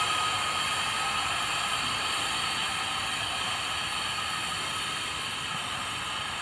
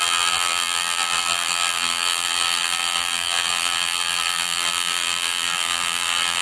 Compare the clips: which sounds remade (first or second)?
second